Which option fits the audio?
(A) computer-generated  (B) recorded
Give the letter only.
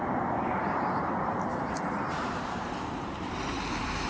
A